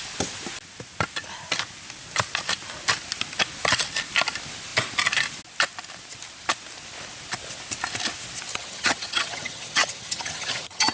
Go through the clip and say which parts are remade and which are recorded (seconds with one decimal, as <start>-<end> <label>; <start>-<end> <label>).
0.0-8.5 recorded; 8.5-10.9 remade